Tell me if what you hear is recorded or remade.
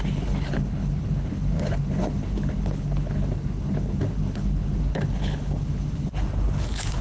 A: remade